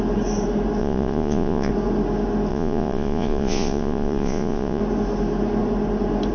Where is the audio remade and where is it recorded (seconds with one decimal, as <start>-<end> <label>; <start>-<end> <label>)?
0.0-0.8 recorded; 0.8-1.7 remade; 1.7-2.5 recorded; 2.5-4.8 remade; 4.8-6.3 recorded

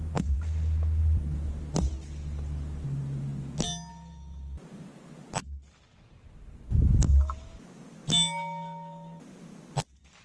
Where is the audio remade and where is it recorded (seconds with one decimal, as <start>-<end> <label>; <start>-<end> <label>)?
0.0-10.2 recorded

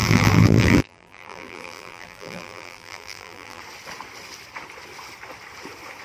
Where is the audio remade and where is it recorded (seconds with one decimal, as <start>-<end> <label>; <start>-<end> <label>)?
0.0-3.6 remade; 3.6-6.0 recorded